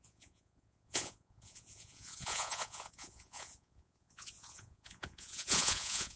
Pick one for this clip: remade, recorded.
remade